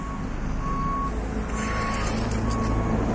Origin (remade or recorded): recorded